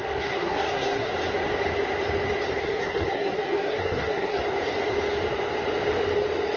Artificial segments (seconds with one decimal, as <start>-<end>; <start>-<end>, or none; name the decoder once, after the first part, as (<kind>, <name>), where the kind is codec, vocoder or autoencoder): 0.0-1.1 (codec, SNAC); 2.6-4.4